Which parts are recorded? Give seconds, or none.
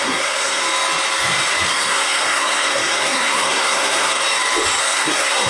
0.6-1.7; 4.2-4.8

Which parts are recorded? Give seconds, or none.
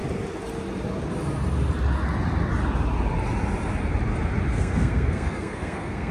0.0-4.5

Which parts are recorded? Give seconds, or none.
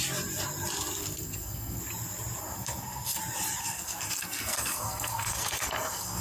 0.0-1.0; 1.8-2.4; 3.2-3.6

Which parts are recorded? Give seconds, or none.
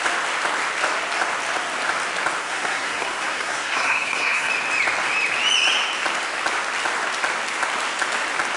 0.0-2.4; 4.5-8.6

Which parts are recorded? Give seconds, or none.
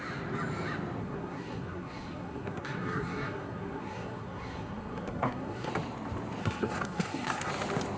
0.0-1.0; 5.7-6.4; 7.5-8.0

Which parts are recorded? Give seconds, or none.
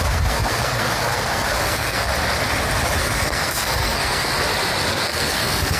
2.1-3.0; 4.3-4.9